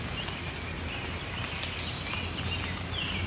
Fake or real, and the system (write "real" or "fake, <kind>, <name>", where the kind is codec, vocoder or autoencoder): real